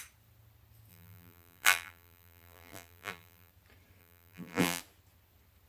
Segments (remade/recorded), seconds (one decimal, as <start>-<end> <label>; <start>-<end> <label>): 0.0-0.9 recorded; 0.9-3.5 remade; 3.5-4.0 recorded; 4.0-4.8 remade; 4.8-5.7 recorded